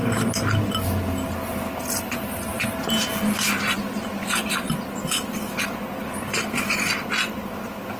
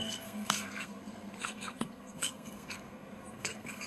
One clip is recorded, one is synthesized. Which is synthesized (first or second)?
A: second